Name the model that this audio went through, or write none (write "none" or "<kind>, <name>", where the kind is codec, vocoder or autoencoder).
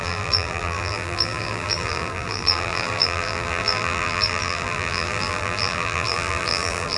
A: vocoder, BigVGAN v2